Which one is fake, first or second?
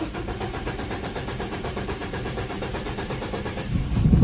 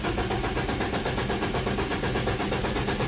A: first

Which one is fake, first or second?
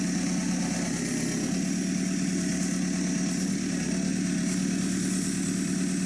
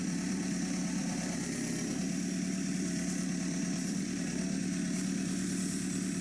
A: second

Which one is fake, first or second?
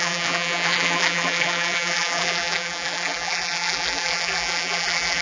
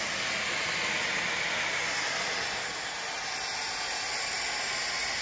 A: first